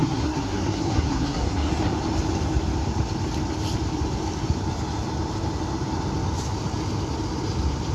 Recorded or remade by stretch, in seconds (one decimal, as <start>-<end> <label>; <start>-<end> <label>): 0.0-1.7 remade; 1.7-7.9 recorded